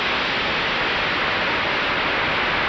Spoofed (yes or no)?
no